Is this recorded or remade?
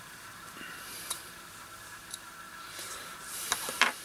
remade